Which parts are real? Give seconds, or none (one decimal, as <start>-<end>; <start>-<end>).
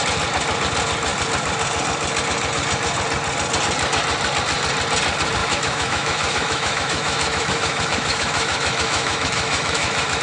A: 0.0-5.4